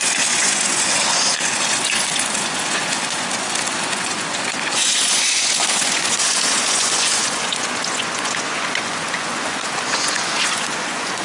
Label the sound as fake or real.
fake